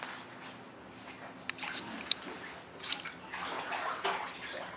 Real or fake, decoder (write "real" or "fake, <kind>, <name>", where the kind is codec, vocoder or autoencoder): real